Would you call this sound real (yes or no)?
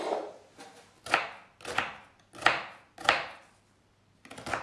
yes